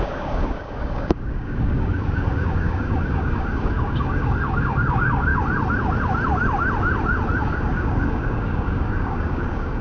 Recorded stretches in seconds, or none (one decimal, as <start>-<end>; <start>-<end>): 5.3-7.4